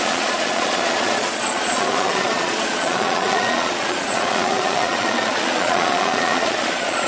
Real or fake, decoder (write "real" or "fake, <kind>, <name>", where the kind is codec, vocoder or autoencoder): fake, vocoder, Vocos